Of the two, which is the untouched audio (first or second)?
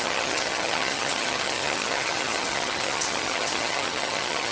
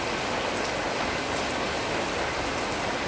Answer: second